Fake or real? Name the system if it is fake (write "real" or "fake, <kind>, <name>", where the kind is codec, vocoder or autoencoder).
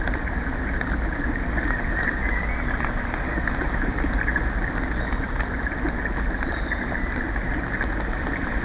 real